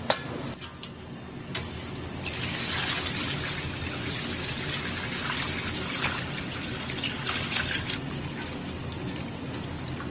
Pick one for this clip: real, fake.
real